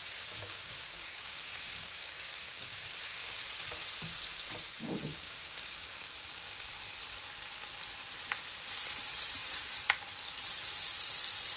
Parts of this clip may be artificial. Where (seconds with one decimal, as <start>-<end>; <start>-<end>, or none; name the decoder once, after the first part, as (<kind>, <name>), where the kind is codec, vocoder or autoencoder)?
0.0-3.4 (codec, DAC); 5.1-6.8

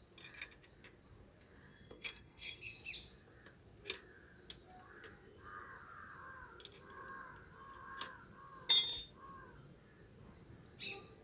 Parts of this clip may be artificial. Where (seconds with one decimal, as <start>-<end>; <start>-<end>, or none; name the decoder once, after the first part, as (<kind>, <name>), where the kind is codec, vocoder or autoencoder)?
1.7-2.8 (codec, SNAC)